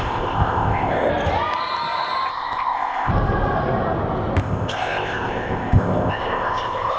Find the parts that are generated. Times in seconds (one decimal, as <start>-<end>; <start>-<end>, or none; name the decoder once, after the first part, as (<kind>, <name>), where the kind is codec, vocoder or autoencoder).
0.0-1.1 (codec, ZipCodec); 2.3-3.1; 4.4-7.0